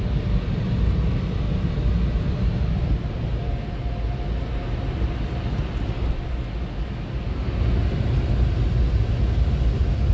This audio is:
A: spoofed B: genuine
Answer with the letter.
B